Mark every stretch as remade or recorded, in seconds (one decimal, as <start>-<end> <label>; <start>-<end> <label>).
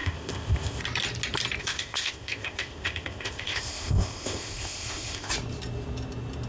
0.0-0.8 remade; 0.8-1.6 recorded; 1.6-5.3 remade; 5.3-6.5 recorded